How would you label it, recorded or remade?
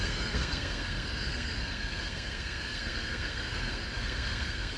remade